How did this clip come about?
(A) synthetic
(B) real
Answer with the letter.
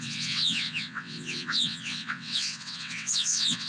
A